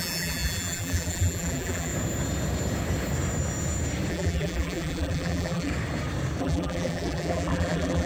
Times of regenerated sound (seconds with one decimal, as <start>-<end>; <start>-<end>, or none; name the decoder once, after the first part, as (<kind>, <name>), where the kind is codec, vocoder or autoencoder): 0.0-1.9 (vocoder, BigVGAN v2); 4.1-5.7; 6.4-8.1